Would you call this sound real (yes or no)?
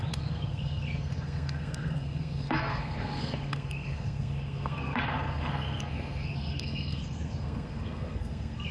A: no